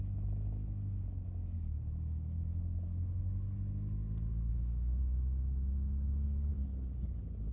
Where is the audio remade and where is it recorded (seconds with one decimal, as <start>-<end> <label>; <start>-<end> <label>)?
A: 0.0-4.5 recorded; 4.5-5.0 remade; 5.0-7.5 recorded